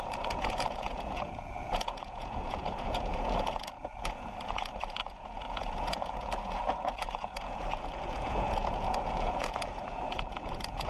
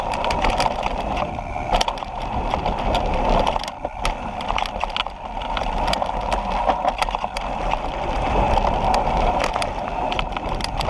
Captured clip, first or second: second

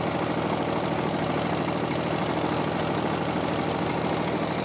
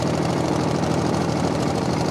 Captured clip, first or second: first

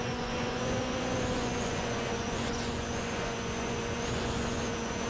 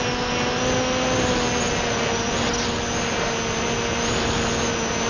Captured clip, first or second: second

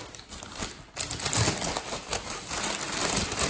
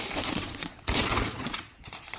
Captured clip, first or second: first